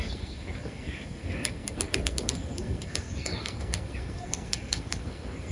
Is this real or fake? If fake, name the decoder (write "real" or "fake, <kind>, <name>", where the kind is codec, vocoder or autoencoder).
fake, codec, SNAC